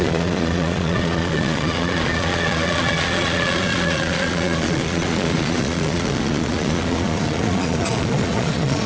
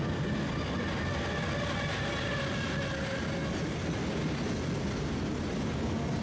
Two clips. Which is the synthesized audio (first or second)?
first